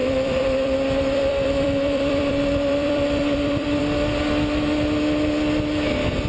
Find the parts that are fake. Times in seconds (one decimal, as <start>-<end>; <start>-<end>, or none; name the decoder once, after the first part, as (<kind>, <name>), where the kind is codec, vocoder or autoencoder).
0.0-3.8 (vocoder, BigVGAN v2)